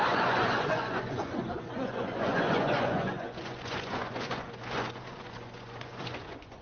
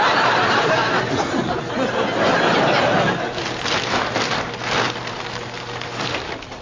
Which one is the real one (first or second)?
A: second